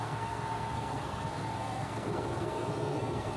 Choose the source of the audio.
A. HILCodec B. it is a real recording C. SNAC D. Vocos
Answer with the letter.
C